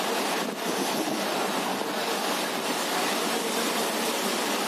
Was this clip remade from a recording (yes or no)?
yes